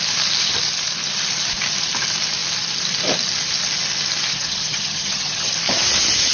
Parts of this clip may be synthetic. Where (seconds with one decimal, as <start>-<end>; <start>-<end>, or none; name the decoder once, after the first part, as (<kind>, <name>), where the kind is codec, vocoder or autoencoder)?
4.3-5.5 (vocoder, HiFi-GAN)